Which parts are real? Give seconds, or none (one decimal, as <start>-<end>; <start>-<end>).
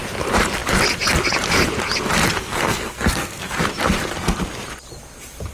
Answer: 0.0-2.4; 3.6-5.5